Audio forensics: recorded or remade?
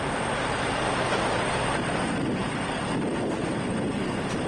recorded